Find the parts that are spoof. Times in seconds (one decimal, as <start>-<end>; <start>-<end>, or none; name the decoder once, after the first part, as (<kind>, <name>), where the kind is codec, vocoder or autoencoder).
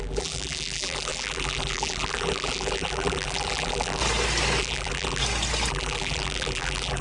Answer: 0.0-4.0 (vocoder, BigVGAN v2); 4.6-5.2; 5.7-7.0